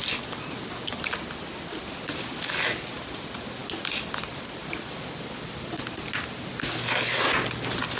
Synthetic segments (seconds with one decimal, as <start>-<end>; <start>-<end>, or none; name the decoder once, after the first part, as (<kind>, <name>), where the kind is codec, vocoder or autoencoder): none